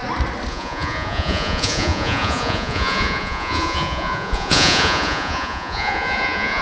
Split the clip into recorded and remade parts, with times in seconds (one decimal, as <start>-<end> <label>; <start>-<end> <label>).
0.0-0.5 recorded; 0.5-6.6 remade